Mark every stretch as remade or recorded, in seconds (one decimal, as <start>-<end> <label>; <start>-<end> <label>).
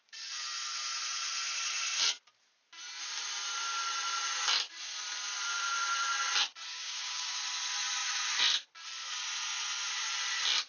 0.0-6.7 recorded; 6.7-7.4 remade; 7.4-10.7 recorded